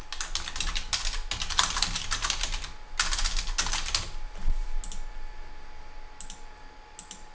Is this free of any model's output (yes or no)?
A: yes